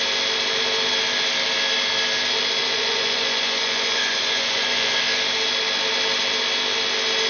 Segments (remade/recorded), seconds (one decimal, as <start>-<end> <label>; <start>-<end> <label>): 0.0-2.6 recorded; 2.6-5.0 remade; 5.0-7.3 recorded